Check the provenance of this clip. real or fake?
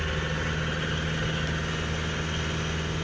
real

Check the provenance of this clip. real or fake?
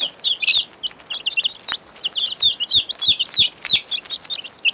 real